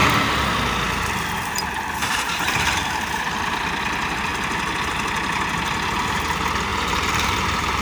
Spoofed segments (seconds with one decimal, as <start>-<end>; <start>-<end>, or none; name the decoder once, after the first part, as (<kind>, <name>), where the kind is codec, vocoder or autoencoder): 0.0-0.6 (vocoder, BigVGAN v2); 2.0-3.2; 6.7-7.8